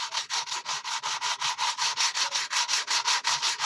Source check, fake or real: real